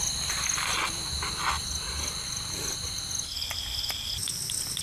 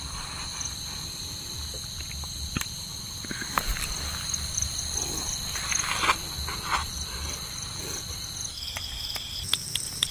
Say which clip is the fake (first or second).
second